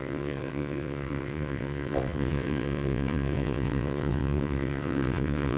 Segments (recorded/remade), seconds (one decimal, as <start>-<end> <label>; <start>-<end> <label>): 0.0-5.6 remade